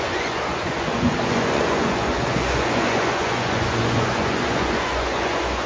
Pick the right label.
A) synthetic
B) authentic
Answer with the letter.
A